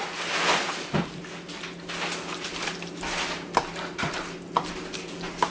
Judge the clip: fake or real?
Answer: real